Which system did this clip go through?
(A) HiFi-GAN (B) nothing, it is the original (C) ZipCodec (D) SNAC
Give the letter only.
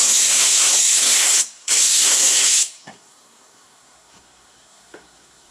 D